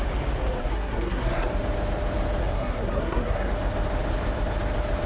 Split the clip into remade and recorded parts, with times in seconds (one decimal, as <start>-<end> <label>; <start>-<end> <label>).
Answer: 0.0-0.6 recorded; 0.6-1.5 remade; 1.5-2.4 recorded; 2.4-3.5 remade; 3.5-5.1 recorded